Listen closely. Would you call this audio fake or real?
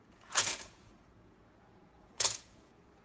fake